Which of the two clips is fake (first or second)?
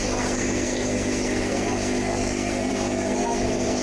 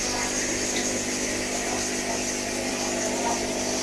first